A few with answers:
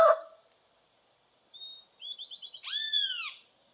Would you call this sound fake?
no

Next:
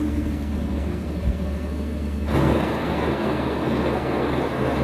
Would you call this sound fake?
yes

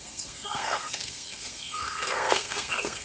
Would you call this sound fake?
yes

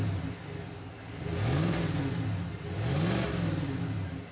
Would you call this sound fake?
no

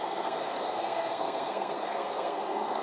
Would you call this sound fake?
yes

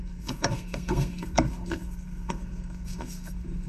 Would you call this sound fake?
yes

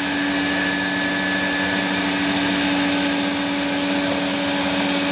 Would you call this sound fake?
no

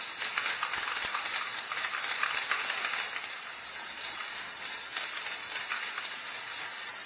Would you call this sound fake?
no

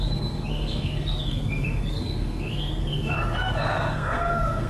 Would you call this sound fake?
yes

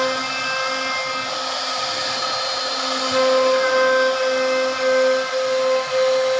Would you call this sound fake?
no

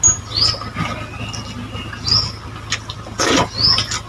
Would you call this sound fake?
no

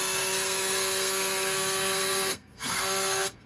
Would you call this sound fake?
yes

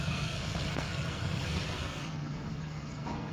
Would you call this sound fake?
yes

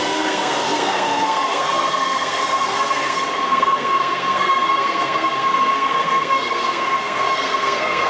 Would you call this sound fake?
yes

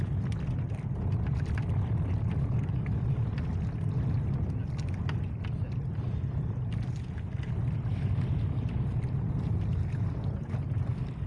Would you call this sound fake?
no